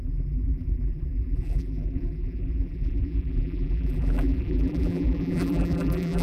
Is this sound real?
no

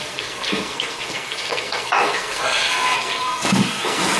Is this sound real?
no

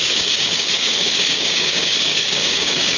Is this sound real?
no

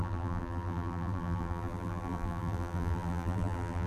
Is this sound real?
no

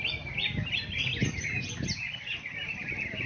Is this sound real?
yes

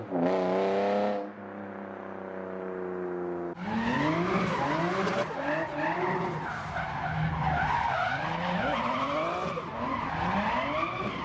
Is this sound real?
yes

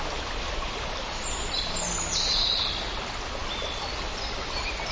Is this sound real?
yes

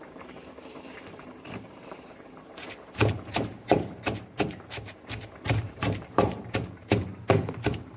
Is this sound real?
no